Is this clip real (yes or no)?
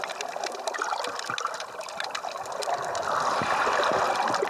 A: yes